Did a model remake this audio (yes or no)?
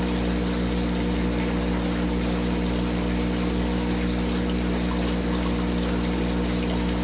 no